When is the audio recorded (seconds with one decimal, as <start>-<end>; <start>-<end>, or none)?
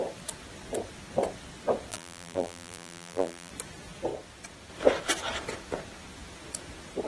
0.0-1.9; 3.5-7.1